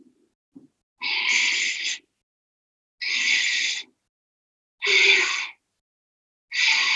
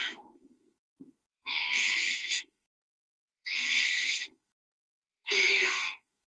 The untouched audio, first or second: first